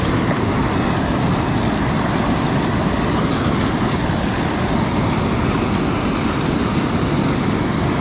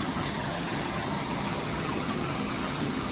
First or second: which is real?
first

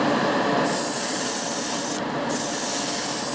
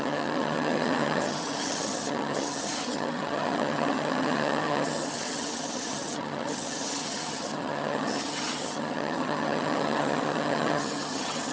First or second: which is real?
first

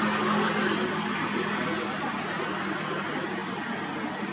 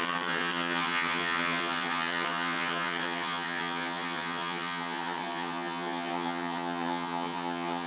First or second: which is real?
first